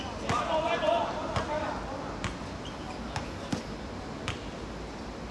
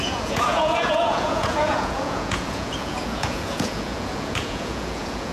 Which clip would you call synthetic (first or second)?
second